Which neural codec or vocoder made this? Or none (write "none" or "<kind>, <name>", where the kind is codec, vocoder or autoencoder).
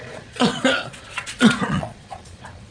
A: vocoder, Vocos